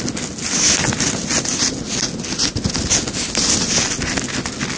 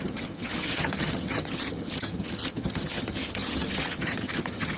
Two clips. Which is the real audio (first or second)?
first